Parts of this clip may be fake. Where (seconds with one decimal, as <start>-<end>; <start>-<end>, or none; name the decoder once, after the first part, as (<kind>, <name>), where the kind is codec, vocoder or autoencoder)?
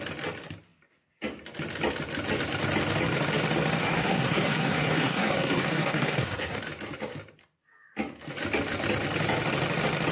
3.8-6.6 (codec, SNAC)